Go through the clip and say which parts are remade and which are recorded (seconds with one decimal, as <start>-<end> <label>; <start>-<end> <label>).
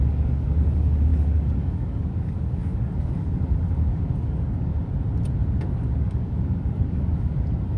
0.0-4.7 remade; 4.7-5.5 recorded; 5.5-7.8 remade